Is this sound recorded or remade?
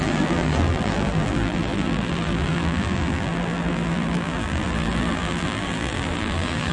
remade